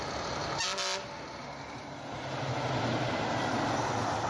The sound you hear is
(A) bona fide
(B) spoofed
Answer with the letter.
A